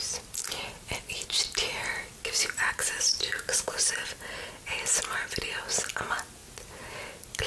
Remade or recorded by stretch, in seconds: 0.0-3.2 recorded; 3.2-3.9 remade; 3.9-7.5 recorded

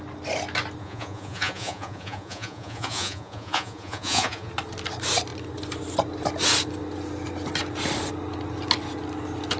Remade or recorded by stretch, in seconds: 0.0-0.8 recorded; 0.8-4.5 remade; 4.5-9.6 recorded

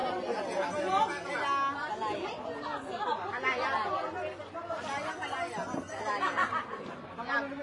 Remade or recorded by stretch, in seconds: 0.0-7.6 recorded

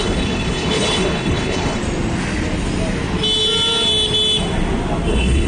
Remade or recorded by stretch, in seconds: 0.0-1.8 remade; 1.8-5.1 recorded; 5.1-5.5 remade

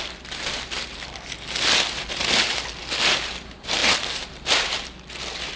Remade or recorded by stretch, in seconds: 0.0-5.6 remade

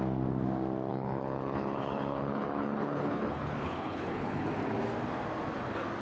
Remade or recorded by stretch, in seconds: 0.0-0.9 recorded; 0.9-4.5 remade; 4.5-6.0 recorded

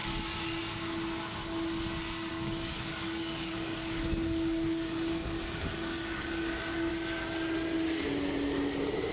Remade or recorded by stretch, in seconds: 0.0-0.6 remade; 0.6-2.3 recorded; 2.3-6.9 remade; 6.9-9.1 recorded

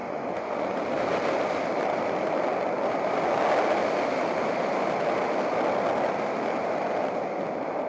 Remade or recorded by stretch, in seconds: 0.0-0.8 remade; 0.8-7.9 recorded